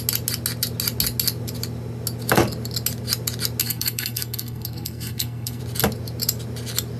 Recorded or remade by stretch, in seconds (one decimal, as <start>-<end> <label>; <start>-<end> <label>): 0.0-3.6 recorded; 3.6-5.6 remade; 5.6-7.0 recorded